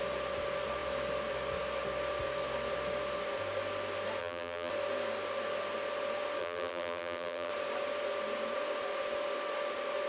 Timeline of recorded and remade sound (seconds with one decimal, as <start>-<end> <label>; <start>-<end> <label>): 0.0-4.2 recorded; 4.2-4.7 remade; 4.7-6.4 recorded; 6.4-7.5 remade; 7.5-10.1 recorded